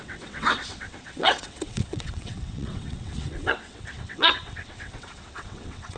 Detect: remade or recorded remade